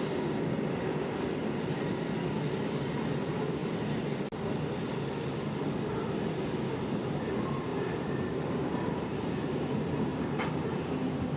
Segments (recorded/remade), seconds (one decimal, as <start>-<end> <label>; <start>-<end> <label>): 0.0-7.7 recorded; 7.7-9.1 remade; 9.1-10.1 recorded; 10.1-10.9 remade; 10.9-11.4 recorded